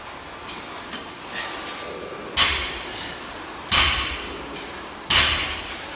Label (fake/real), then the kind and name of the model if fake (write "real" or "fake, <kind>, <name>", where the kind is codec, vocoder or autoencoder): real